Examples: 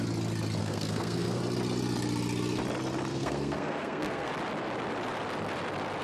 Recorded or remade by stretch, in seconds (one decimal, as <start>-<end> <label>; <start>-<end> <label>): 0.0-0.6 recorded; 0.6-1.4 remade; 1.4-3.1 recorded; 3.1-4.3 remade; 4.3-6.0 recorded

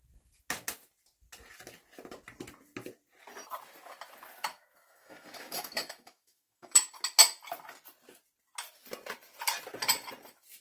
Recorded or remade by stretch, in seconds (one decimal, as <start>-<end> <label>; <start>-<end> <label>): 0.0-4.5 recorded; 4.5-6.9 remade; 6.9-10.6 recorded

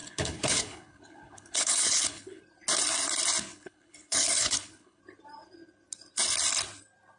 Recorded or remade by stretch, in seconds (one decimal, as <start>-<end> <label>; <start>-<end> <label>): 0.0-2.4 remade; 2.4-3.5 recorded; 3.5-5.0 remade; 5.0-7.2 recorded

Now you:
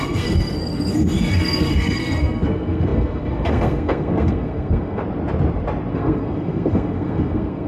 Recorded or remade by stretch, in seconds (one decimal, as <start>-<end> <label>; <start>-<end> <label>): 0.0-5.0 remade; 5.0-5.9 recorded; 5.9-7.7 remade

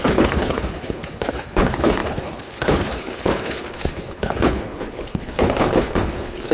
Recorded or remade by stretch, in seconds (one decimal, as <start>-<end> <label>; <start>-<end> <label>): 0.0-6.5 remade

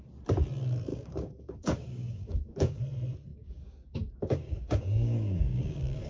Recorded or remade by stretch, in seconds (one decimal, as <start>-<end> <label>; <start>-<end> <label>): 0.0-0.9 recorded; 0.9-2.8 remade; 2.8-3.3 recorded; 3.3-6.1 remade

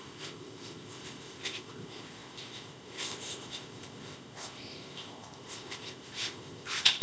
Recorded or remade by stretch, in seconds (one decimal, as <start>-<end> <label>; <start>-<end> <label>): 0.0-7.0 remade